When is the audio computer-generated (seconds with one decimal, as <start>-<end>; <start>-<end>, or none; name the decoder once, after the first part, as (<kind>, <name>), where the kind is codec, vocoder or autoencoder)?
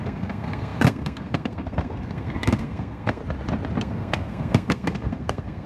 0.0-3.2 (codec, SNAC); 3.8-5.7